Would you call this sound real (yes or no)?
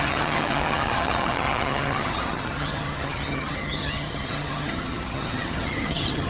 no